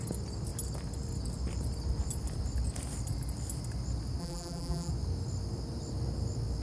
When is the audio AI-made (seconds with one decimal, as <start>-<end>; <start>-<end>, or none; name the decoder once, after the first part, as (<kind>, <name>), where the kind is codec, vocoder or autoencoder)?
4.2-4.9 (vocoder, BigVGAN v2)